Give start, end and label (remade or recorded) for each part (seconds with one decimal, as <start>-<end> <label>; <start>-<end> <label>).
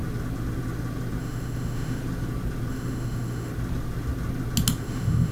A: 0.0-1.2 recorded; 1.2-2.0 remade; 2.0-2.7 recorded; 2.7-3.5 remade; 3.5-4.8 recorded; 4.8-5.3 remade